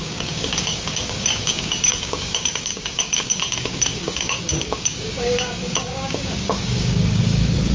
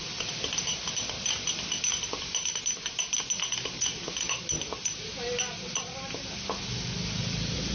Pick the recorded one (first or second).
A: second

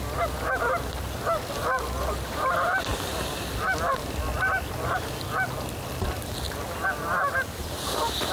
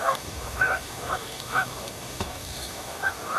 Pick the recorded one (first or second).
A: first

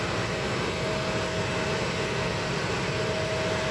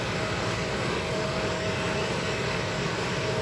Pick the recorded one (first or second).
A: first